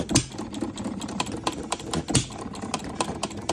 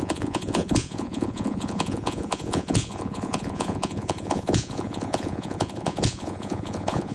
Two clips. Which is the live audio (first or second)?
first